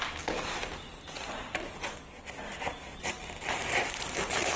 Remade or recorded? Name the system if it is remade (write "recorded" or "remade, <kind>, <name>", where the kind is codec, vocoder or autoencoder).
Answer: recorded